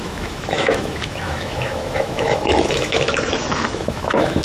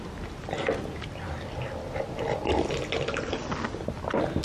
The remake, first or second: first